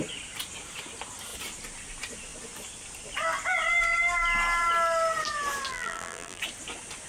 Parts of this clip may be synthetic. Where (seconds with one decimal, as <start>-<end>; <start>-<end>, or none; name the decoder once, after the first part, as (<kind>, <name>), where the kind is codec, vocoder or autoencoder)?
5.7-6.4 (vocoder, BigVGAN v2)